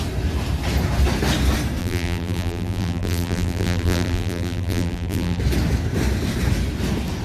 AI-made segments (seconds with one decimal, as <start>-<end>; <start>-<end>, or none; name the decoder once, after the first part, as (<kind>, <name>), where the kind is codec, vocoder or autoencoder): 1.8-5.4 (vocoder, BigVGAN v2)